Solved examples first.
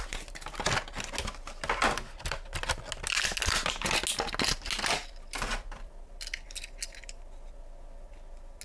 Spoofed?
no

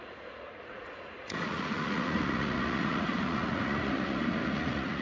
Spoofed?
yes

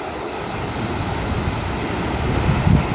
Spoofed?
no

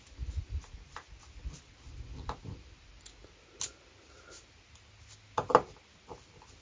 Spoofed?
no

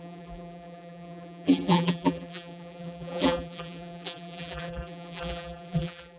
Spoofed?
yes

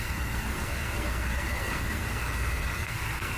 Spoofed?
yes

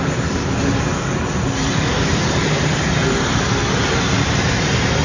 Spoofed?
no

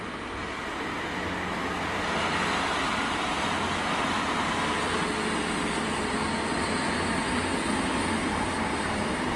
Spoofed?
no